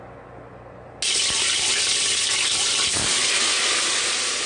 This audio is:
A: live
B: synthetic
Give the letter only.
A